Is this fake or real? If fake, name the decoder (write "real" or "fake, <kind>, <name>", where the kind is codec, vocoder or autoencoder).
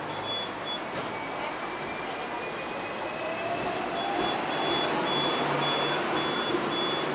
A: real